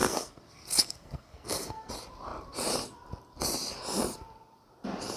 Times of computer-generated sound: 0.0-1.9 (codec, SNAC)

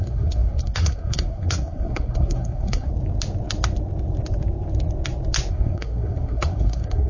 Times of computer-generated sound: 0.0-2.9 (codec, SNAC); 5.5-7.1

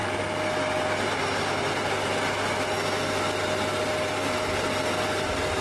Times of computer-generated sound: none

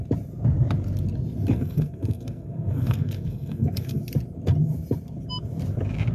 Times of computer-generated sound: 1.5-4.0 (codec, SNAC)

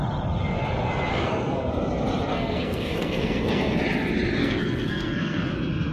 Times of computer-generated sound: 1.1-1.7 (codec, SNAC); 2.3-3.8; 4.4-5.5

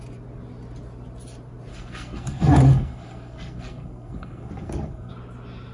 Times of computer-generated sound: 1.7-5.1 (codec, SNAC)